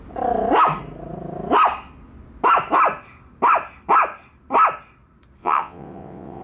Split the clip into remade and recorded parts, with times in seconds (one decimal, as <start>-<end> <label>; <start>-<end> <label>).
0.0-5.4 recorded; 5.4-6.4 remade